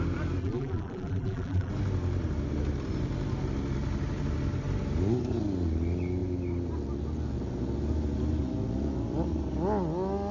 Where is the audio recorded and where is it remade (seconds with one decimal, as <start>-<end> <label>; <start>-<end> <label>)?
0.0-0.4 recorded; 0.4-1.7 remade; 1.7-10.3 recorded